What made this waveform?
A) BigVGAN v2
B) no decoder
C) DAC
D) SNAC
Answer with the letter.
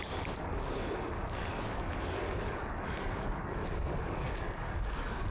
C